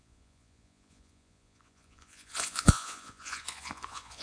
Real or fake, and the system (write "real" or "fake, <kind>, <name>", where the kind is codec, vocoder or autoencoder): fake, vocoder, Vocos